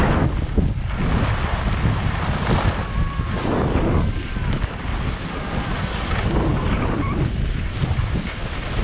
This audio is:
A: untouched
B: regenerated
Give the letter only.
A